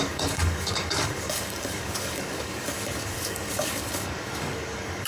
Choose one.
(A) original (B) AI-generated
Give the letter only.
B